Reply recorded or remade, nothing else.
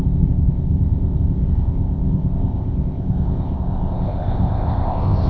remade